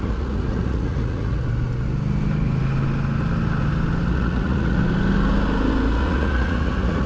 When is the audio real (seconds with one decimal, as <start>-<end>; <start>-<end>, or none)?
1.4-4.1; 4.8-6.0